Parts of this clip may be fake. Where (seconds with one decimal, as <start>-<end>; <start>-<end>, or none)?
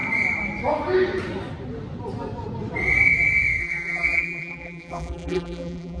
3.6-6.0